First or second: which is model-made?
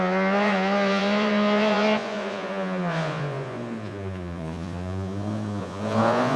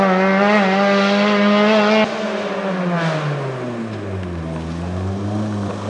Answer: first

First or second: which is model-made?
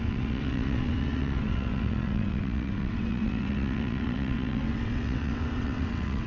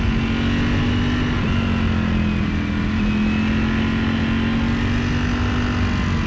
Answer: first